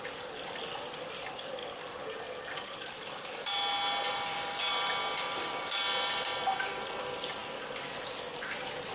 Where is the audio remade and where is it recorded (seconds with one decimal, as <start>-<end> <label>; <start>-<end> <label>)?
0.0-1.6 remade; 1.6-4.0 recorded; 4.0-7.4 remade; 7.4-8.3 recorded; 8.3-8.9 remade